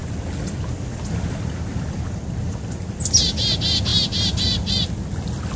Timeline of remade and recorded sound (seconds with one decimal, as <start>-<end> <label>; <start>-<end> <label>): 0.0-5.6 recorded